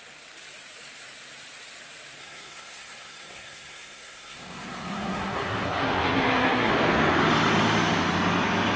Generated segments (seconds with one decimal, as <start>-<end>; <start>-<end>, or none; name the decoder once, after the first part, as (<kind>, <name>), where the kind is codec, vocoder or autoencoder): 2.2-6.7 (codec, SNAC)